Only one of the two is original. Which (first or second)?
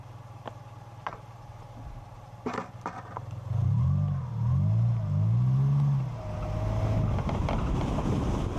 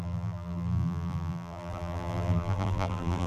first